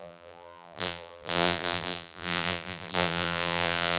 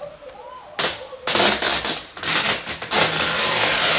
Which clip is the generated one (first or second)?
first